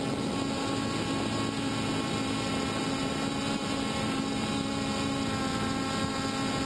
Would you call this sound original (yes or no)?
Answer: yes